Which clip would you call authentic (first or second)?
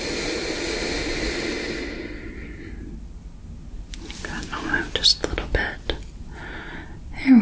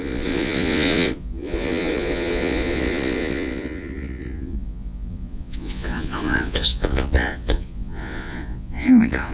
first